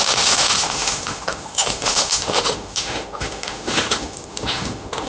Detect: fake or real fake